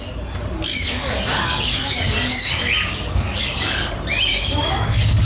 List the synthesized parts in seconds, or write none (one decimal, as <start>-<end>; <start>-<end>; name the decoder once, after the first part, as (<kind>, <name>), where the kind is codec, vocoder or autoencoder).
0.7-3.9 (codec, DAC); 4.3-5.3